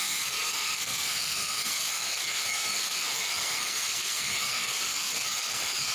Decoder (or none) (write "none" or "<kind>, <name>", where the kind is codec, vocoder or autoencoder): codec, SNAC